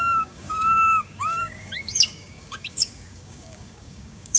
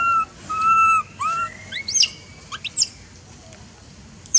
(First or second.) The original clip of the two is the second